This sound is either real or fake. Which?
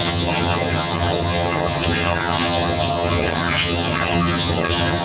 fake